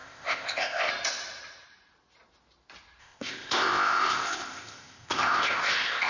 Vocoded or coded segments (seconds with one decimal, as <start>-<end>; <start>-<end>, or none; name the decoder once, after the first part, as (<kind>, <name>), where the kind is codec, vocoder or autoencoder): 0.0-0.9 (codec, ZipCodec); 3.0-6.1